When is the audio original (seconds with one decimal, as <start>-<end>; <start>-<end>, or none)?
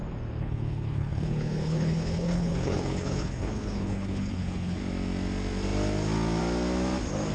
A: 0.0-0.4; 4.8-7.3